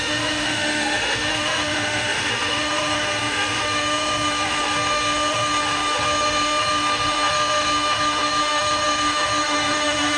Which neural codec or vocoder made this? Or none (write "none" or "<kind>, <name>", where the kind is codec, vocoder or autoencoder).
autoencoder, DAC-VAE